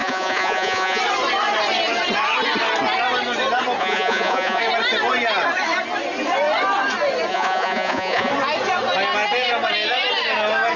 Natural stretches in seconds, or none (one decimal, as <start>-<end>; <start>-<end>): 1.0-3.8; 4.6-7.3; 8.3-10.8